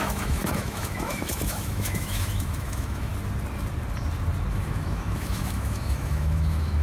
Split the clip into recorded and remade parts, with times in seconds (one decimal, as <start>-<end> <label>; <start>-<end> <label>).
0.0-3.1 remade; 3.1-4.5 recorded; 4.5-6.8 remade